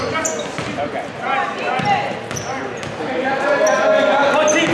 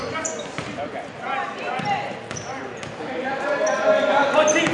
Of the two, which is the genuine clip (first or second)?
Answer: first